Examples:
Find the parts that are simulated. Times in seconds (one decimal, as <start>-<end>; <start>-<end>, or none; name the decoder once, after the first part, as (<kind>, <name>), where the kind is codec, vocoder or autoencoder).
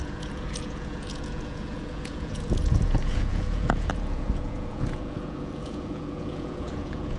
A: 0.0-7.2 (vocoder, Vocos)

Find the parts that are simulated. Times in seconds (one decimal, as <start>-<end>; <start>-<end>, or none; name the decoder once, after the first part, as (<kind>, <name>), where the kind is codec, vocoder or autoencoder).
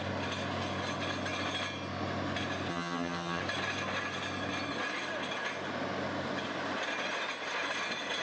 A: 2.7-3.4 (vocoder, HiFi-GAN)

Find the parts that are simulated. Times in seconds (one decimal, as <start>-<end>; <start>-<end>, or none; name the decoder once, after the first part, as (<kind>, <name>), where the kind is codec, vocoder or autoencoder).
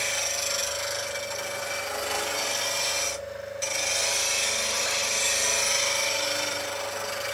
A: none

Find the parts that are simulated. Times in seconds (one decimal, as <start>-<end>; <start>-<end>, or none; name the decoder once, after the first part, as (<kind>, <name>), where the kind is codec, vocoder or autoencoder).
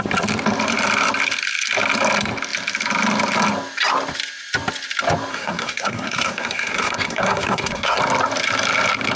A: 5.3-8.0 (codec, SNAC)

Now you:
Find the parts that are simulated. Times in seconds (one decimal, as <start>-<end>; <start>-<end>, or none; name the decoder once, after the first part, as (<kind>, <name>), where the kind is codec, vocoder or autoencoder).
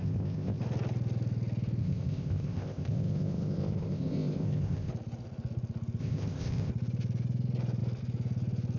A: 0.0-0.6 (codec, ZipCodec); 1.8-4.9; 6.0-6.7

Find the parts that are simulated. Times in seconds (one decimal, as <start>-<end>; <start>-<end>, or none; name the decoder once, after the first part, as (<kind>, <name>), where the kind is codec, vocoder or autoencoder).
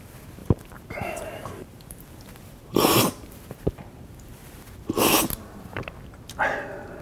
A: 0.4-4.6 (vocoder, BigVGAN v2)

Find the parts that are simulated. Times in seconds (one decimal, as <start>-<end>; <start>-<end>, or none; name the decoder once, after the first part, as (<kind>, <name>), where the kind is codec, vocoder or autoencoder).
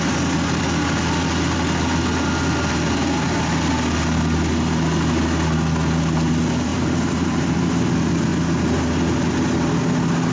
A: 6.7-7.9 (vocoder, BigVGAN v2)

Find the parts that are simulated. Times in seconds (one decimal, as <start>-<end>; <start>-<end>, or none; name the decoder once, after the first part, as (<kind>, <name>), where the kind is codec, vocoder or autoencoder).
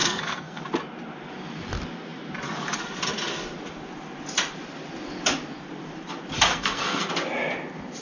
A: 0.0-0.6 (codec, SNAC); 6.5-7.1